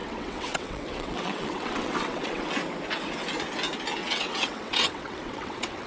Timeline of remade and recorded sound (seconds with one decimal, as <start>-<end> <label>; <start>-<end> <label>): 0.0-2.5 remade; 2.5-4.0 recorded; 4.0-5.9 remade